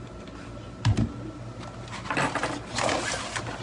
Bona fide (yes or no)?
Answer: yes